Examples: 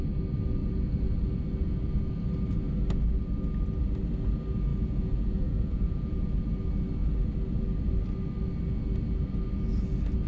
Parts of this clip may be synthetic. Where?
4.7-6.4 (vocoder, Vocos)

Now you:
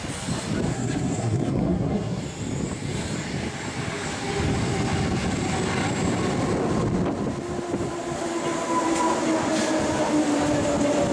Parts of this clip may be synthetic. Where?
0.7-2.2 (codec, SNAC)

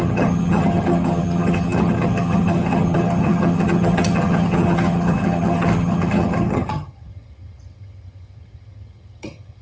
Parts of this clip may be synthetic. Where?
0.0-9.6 (vocoder, HiFi-GAN)

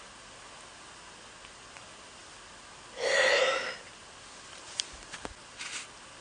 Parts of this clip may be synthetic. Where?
none

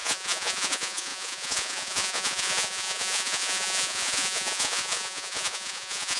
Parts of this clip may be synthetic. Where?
0.0-6.2 (vocoder, Vocos)

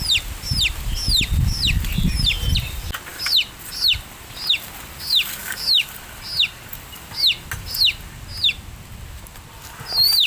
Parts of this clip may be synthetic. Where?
5.4-5.9 (autoencoder, DAC-VAE)

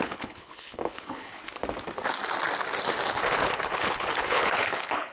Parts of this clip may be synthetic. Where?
0.0-1.4 (codec, HILCodec); 3.2-5.1

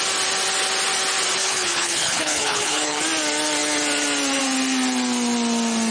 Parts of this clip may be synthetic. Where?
1.4-3.0 (codec, HILCodec)